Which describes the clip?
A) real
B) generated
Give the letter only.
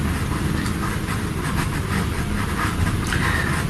A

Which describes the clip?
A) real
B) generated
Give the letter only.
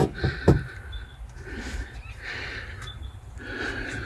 A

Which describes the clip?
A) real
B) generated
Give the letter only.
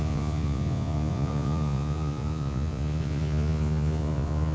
B